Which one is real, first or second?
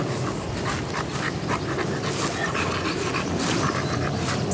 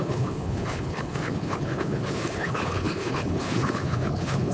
first